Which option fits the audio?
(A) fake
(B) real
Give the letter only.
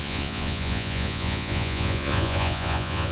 A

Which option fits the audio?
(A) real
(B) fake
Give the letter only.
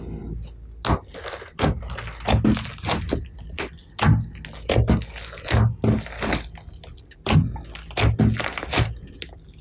A